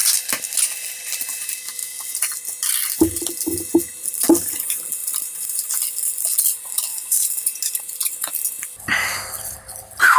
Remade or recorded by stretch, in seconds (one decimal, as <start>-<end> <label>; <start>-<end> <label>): 0.0-5.0 recorded; 5.0-5.7 remade; 5.7-6.9 recorded; 6.9-7.8 remade; 7.8-10.2 recorded